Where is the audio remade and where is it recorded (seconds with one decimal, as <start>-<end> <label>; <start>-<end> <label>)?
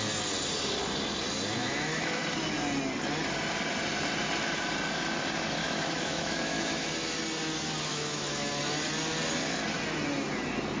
0.0-1.6 recorded; 1.6-2.2 remade; 2.2-5.6 recorded; 5.6-6.9 remade; 6.9-7.9 recorded; 7.9-8.5 remade; 8.5-10.8 recorded